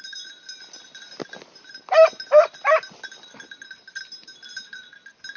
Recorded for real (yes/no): yes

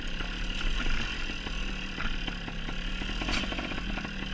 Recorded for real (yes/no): yes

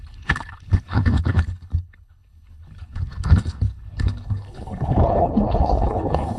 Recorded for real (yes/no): no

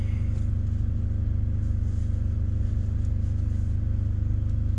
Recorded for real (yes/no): yes